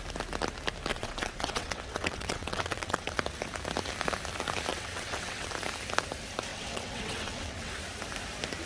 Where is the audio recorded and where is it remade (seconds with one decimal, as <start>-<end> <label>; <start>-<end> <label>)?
0.0-0.9 recorded; 0.9-3.1 remade; 3.1-4.7 recorded; 4.7-5.5 remade; 5.5-6.5 recorded; 6.5-7.7 remade; 7.7-8.7 recorded